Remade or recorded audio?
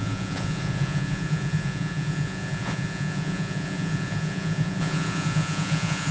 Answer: remade